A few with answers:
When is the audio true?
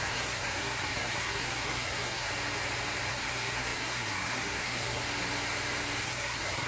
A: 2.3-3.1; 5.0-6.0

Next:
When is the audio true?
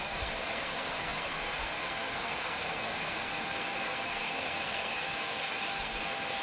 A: none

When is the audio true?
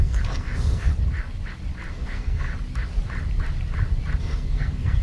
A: 0.9-1.9; 2.5-4.2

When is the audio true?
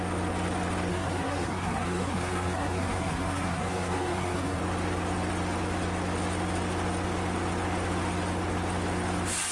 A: 0.0-0.9; 4.6-9.5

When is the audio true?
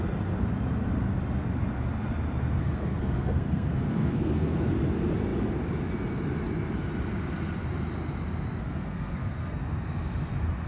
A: 0.0-2.6; 4.7-8.6; 9.6-10.7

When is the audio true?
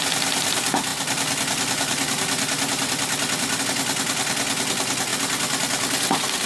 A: 0.0-6.5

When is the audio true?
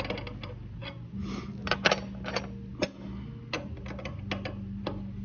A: 0.0-5.2